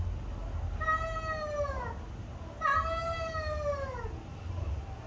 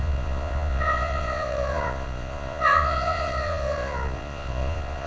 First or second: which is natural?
first